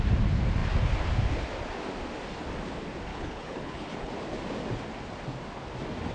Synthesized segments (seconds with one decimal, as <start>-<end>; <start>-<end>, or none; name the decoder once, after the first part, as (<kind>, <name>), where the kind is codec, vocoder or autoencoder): 3.1-4.1 (codec, HILCodec)